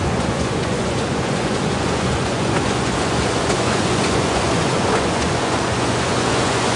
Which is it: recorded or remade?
remade